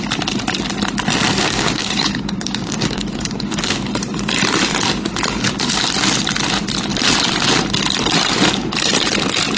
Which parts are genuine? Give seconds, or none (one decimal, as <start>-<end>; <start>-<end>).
0.0-1.4; 3.8-9.6